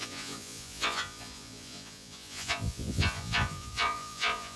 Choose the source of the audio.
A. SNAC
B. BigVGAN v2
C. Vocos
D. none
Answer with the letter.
C